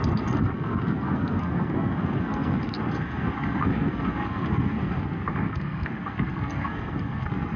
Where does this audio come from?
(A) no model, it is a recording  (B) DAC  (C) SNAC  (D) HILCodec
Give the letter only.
C